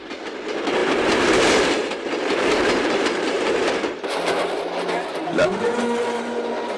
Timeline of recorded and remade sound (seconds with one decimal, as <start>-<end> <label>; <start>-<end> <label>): 0.0-0.8 recorded; 0.8-4.4 remade; 4.4-6.8 recorded